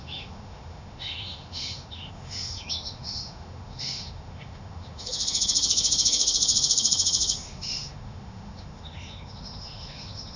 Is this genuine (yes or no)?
no